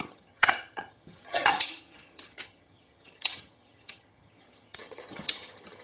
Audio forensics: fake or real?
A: fake